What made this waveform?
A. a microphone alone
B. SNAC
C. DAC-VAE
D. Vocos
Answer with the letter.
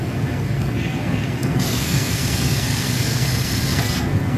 B